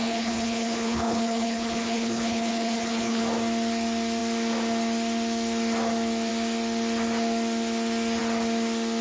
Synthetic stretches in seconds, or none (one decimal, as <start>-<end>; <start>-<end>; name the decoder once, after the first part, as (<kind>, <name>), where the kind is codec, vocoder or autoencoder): 0.0-3.2 (codec, HILCodec)